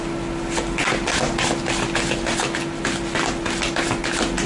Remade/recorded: recorded